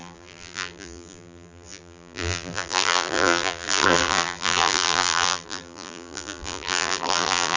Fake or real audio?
fake